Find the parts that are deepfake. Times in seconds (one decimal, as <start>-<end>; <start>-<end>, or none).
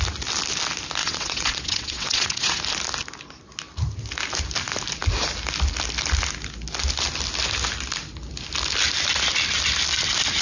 1.0-2.6